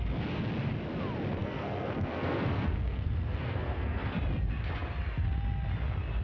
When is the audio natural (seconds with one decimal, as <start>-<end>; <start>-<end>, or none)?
0.0-1.4; 4.2-6.2